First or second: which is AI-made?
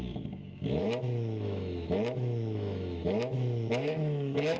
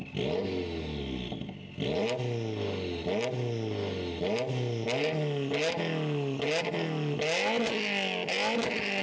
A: first